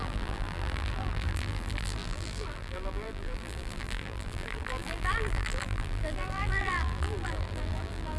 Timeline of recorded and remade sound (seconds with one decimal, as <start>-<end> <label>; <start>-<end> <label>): 0.0-8.2 remade